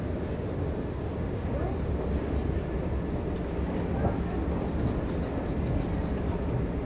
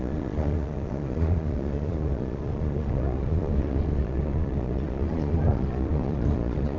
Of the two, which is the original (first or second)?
first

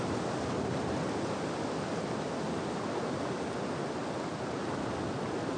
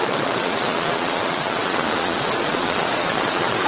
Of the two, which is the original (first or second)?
first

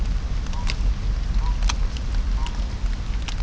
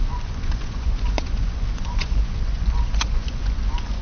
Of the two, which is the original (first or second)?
first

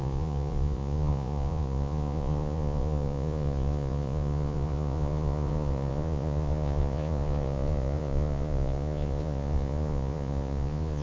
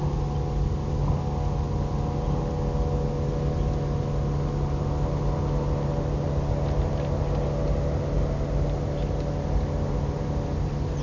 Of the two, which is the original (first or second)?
second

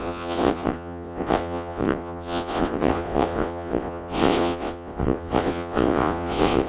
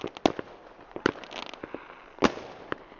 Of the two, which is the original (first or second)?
second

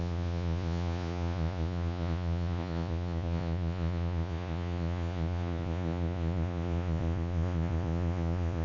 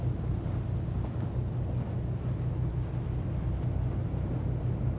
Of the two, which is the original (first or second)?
second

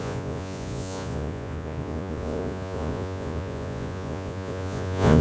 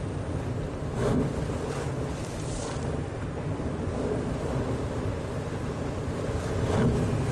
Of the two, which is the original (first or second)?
second